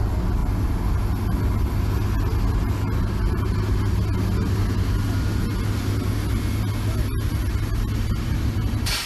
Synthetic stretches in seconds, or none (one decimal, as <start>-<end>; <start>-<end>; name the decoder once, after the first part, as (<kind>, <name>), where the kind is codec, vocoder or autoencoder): none